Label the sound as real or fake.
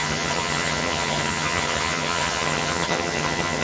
fake